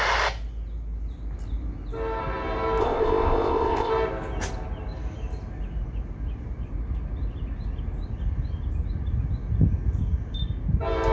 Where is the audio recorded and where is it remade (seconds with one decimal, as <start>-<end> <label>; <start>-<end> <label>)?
0.0-2.8 recorded; 2.8-3.9 remade; 3.9-11.1 recorded